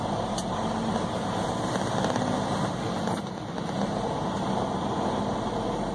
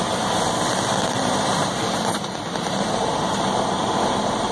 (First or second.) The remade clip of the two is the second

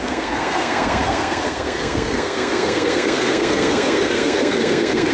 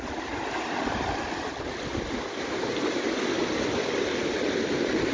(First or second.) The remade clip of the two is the first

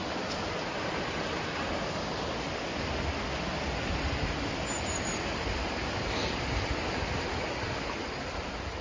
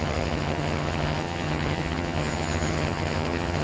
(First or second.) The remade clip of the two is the second